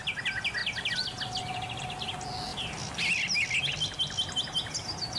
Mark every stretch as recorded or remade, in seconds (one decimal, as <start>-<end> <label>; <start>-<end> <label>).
0.0-5.2 recorded